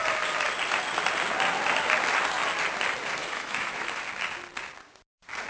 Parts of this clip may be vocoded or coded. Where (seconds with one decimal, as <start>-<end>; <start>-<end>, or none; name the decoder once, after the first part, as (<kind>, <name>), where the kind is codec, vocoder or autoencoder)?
3.2-4.0 (autoencoder, DAC-VAE)